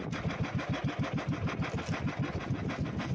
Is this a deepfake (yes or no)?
no